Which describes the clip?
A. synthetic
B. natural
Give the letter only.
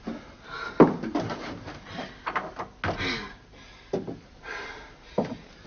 B